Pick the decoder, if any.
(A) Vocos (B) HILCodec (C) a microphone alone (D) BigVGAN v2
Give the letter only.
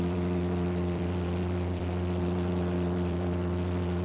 D